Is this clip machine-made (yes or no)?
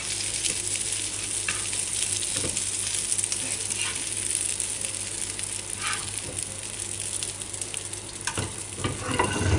no